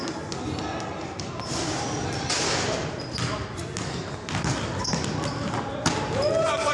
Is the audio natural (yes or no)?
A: yes